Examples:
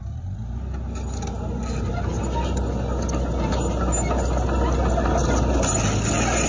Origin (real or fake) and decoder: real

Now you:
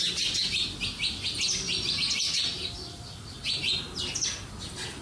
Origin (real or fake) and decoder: real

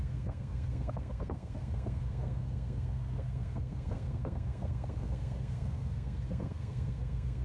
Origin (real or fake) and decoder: fake, codec, SNAC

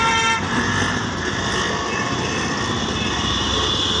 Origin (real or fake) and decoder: real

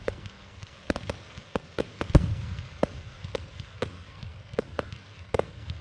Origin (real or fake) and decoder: fake, codec, SNAC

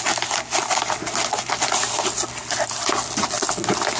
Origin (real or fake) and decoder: real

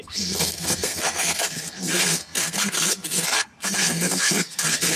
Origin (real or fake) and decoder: fake, codec, SNAC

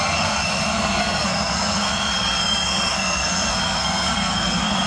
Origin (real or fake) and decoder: fake, codec, SNAC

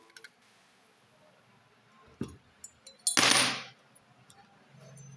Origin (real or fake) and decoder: real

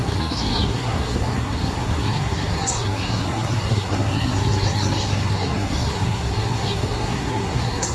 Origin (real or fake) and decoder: fake, codec, SNAC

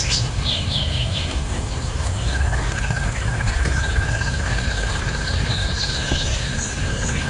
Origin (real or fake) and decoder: fake, codec, SNAC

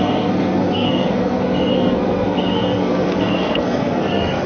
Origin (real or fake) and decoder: fake, codec, SNAC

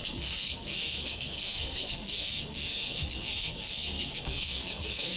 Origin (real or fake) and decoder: fake, codec, SNAC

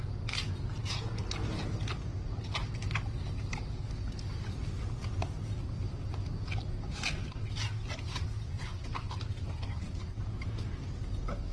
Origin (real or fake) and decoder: real